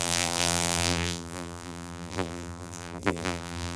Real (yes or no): no